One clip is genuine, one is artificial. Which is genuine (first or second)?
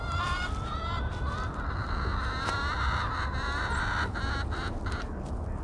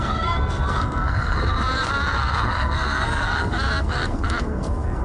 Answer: first